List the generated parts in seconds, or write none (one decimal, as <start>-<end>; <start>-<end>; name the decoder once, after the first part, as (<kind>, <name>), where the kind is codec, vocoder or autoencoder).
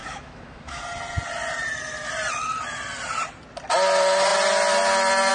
0.0-0.8 (autoencoder, DAC-VAE)